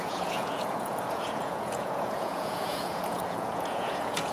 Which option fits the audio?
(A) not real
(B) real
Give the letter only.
A